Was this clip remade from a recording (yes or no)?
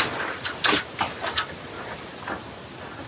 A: no